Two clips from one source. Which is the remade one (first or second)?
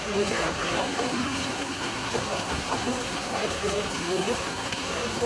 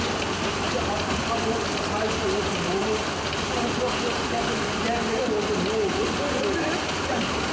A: first